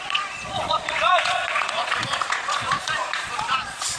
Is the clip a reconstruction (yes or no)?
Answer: yes